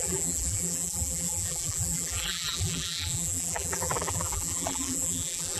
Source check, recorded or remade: remade